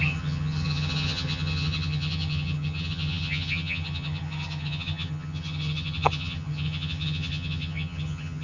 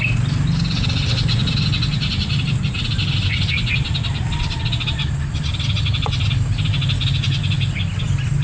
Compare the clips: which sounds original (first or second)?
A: second